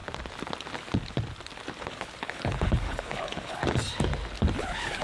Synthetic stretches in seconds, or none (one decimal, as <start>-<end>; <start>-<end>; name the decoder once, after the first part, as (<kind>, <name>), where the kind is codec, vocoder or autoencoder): 1.8-3.6 (codec, HILCodec); 4.6-5.0